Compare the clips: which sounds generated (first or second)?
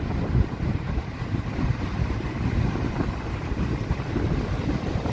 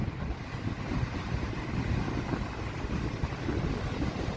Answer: first